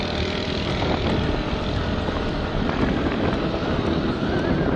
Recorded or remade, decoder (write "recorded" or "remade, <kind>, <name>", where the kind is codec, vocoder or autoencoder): remade, vocoder, BigVGAN v2